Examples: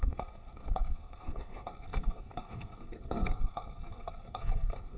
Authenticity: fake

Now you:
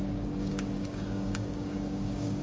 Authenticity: fake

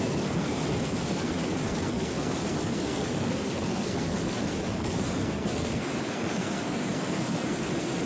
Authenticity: fake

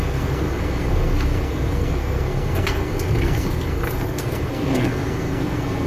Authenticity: fake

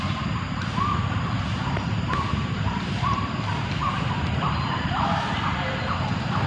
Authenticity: fake